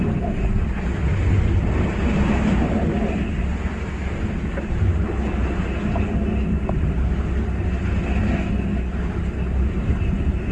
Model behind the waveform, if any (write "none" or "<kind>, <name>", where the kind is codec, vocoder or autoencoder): none